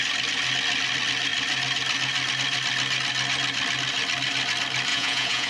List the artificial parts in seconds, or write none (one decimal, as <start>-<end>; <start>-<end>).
4.9-5.5